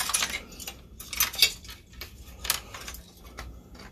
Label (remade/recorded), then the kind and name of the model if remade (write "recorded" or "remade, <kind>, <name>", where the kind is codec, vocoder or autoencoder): recorded